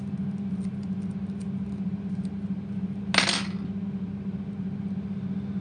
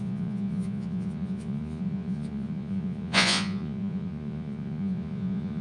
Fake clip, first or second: second